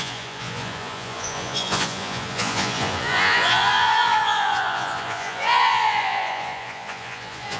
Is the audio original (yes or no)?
no